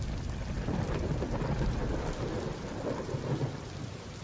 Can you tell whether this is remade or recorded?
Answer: recorded